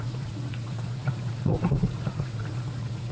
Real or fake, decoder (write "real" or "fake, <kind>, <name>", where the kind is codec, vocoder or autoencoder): fake, vocoder, Vocos